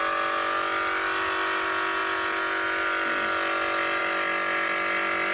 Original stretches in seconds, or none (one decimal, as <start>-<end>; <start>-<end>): 0.0-5.3